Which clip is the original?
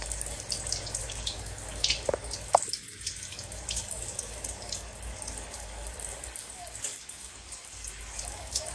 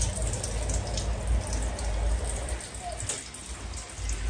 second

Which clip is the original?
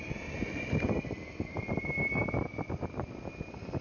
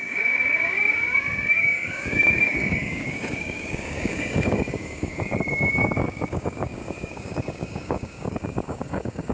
first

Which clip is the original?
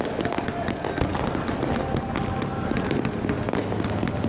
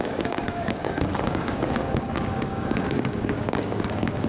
first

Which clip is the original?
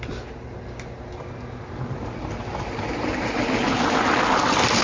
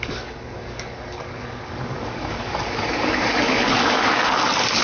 first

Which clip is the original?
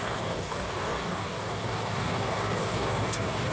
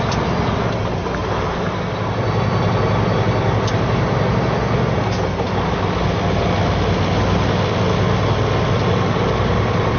second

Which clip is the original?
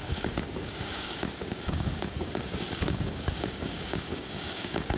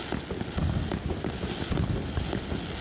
second